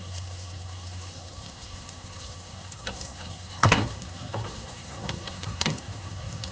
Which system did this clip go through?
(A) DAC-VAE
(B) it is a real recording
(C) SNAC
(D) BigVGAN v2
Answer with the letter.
C